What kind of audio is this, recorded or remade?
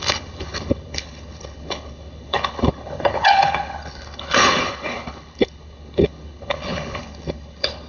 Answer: remade